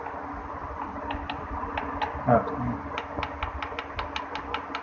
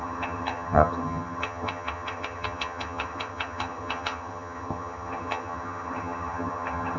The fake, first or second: second